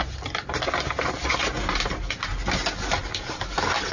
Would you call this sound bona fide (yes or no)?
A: yes